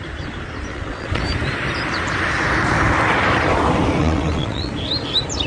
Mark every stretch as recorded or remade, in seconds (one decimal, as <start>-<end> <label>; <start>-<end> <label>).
0.0-0.7 recorded; 0.7-1.2 remade; 1.2-4.0 recorded; 4.0-4.7 remade; 4.7-5.5 recorded